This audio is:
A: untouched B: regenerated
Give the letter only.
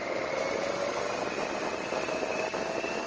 A